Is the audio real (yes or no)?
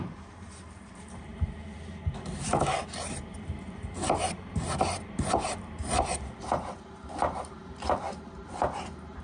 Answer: no